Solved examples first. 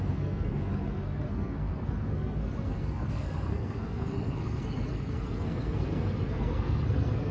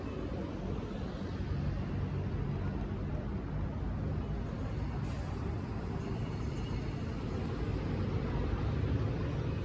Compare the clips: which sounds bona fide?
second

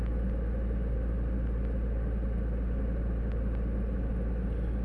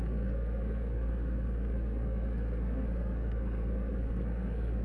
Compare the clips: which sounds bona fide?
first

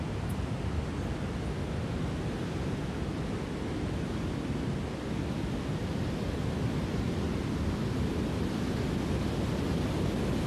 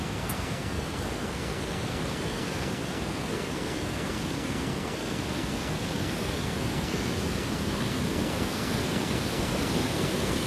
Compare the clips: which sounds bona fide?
first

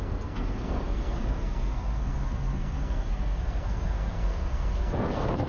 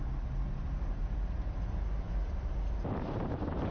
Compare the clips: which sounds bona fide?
second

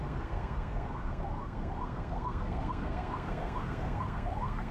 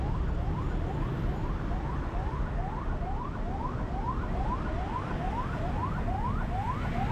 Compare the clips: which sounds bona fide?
second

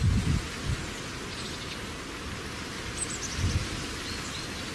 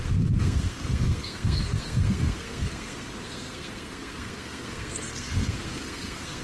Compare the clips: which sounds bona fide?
first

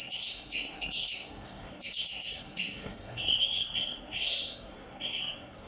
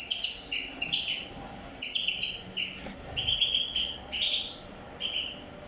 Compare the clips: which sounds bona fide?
second